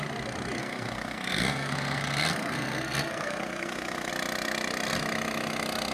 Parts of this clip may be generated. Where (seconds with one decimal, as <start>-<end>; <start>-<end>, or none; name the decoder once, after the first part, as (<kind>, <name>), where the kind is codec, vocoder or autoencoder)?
0.6-4.1 (codec, SNAC)